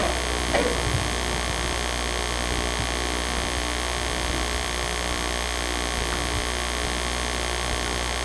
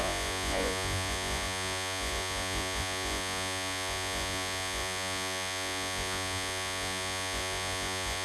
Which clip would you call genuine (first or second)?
first